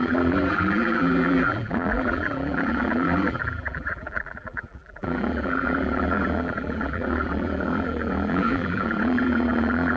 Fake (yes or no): yes